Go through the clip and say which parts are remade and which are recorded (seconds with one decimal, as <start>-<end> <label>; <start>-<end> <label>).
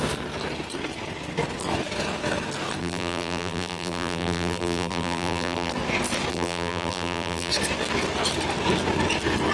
0.0-2.8 recorded; 2.8-5.7 remade; 5.7-6.3 recorded; 6.3-7.5 remade; 7.5-9.5 recorded